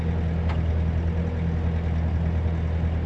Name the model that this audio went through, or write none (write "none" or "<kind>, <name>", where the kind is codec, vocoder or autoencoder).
none